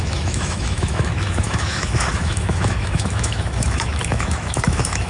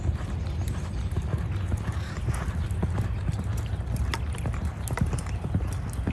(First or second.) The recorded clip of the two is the second